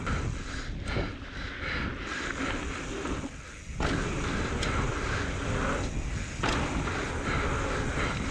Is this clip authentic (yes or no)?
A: yes